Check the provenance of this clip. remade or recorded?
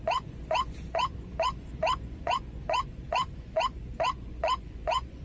remade